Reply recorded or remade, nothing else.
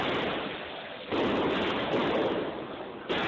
recorded